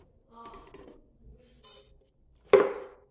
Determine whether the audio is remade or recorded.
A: recorded